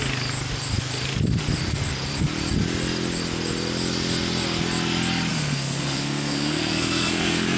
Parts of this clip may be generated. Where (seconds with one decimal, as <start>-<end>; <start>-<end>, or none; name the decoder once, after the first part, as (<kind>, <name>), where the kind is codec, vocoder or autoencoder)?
5.3-7.6 (codec, SNAC)